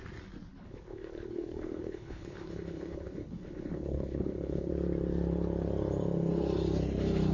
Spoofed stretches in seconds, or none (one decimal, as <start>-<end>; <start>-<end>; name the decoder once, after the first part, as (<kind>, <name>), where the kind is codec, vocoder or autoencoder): 0.5-4.7 (codec, HILCodec)